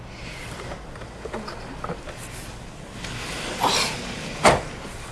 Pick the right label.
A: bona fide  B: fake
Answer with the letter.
A